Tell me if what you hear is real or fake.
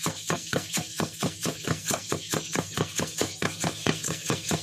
fake